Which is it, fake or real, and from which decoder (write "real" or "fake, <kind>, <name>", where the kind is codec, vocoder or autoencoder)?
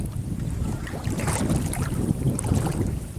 fake, vocoder, BigVGAN v2